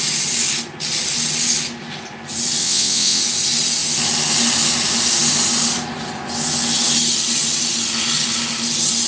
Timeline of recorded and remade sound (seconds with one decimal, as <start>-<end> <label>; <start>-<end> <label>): 0.0-2.6 recorded; 2.6-3.2 remade; 3.2-9.1 recorded